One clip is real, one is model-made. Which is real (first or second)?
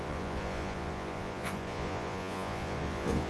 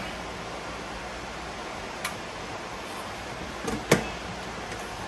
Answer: second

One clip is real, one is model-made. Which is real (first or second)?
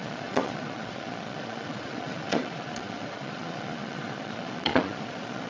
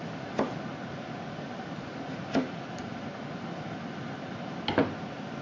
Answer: second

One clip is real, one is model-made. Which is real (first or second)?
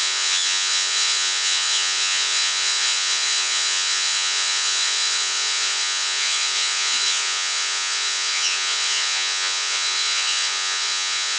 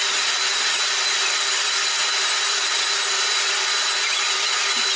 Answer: second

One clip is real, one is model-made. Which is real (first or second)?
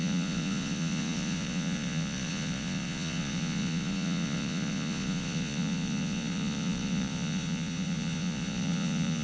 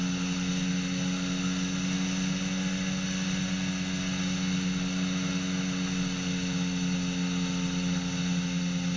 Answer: second